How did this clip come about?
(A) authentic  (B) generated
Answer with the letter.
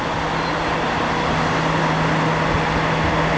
A